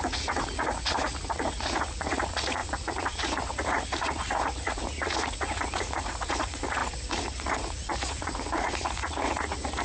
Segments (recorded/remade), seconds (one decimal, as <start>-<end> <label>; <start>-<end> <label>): 0.0-9.8 remade